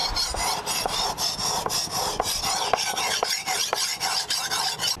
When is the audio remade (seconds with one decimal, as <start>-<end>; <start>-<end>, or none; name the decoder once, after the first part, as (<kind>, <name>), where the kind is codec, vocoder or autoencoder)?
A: none